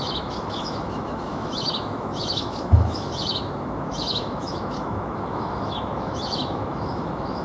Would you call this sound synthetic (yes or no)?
yes